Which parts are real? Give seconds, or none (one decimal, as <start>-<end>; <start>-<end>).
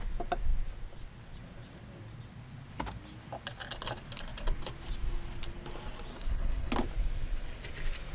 0.0-6.1; 6.7-8.1